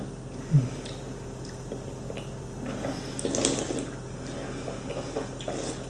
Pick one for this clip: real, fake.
real